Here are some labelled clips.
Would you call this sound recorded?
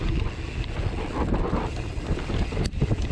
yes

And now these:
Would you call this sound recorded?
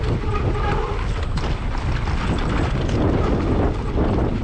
yes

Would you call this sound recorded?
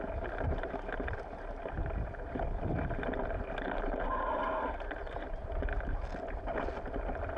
yes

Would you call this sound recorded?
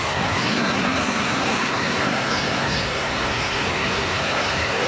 no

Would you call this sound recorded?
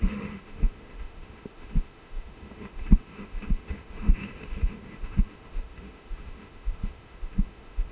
no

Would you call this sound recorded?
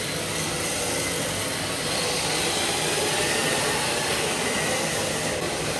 yes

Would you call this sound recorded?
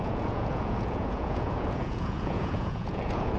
no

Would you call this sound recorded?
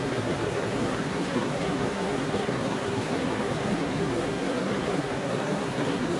no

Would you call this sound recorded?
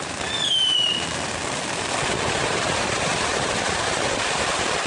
yes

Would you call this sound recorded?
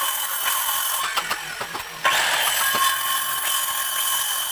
yes